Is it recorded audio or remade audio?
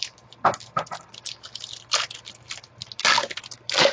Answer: recorded